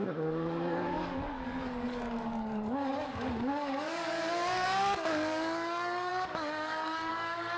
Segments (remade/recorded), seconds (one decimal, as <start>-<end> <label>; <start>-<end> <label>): 0.0-7.6 remade